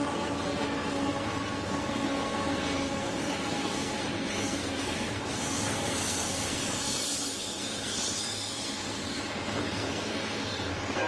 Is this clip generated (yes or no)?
yes